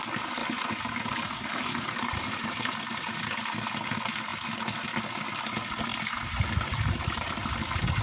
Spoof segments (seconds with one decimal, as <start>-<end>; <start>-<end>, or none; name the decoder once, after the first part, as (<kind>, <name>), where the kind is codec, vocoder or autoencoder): 0.4-3.2 (vocoder, BigVGAN v2); 5.9-7.3